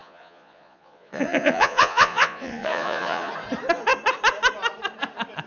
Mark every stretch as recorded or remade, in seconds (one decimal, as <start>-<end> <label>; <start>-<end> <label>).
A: 0.0-3.3 remade; 3.3-5.5 recorded